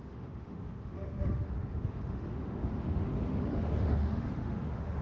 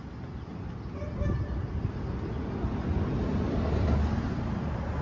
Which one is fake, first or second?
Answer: first